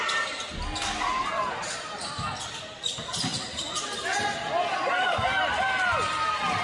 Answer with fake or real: real